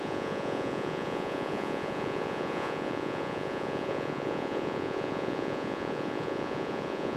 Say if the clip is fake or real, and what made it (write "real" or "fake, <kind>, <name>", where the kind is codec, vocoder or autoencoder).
fake, vocoder, Vocos